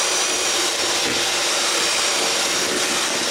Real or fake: real